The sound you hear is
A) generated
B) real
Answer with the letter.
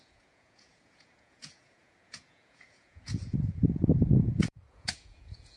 A